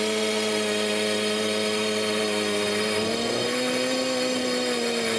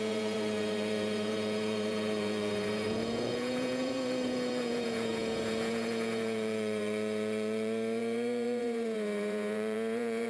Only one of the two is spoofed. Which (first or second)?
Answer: second